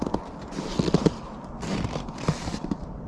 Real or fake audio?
real